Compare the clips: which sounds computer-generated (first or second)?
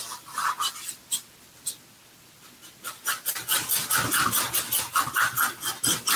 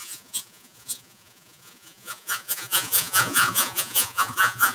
second